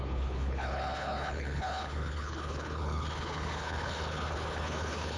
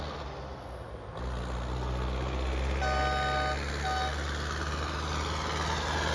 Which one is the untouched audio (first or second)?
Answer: second